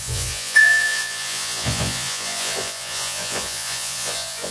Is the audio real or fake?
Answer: fake